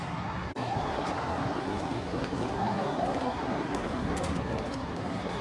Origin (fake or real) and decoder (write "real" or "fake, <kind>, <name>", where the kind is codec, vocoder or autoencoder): fake, codec, SNAC